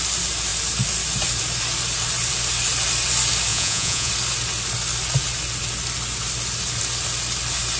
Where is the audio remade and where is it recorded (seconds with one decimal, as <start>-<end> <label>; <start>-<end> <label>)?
0.0-3.5 recorded; 3.5-4.1 remade; 4.1-7.8 recorded

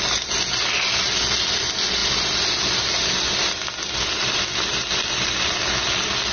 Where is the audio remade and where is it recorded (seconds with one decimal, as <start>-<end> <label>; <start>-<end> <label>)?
0.0-6.3 recorded

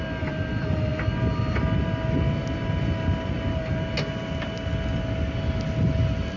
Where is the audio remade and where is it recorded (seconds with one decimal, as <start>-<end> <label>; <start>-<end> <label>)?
0.0-6.4 recorded

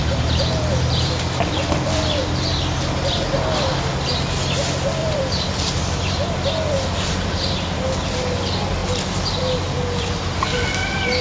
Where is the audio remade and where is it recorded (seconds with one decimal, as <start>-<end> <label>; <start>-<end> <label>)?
0.0-2.2 remade; 2.2-5.0 recorded; 5.0-8.2 remade; 8.2-8.8 recorded; 8.8-11.2 remade

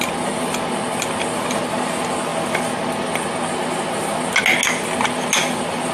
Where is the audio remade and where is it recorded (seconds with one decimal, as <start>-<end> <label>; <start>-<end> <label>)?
0.0-5.9 recorded